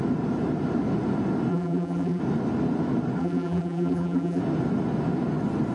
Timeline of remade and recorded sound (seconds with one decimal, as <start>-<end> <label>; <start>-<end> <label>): 0.0-1.5 recorded; 1.5-2.2 remade; 2.2-3.2 recorded; 3.2-4.4 remade; 4.4-5.7 recorded